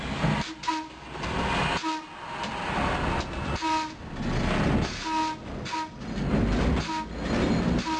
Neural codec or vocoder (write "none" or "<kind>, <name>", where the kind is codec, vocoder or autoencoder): none